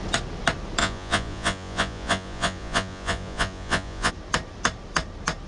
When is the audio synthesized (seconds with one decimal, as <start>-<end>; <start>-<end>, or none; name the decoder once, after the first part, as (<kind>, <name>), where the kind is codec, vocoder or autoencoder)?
0.8-4.1 (vocoder, Vocos)